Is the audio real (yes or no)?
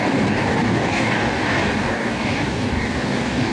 no